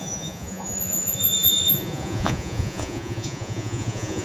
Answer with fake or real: fake